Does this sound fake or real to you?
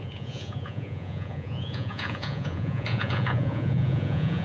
fake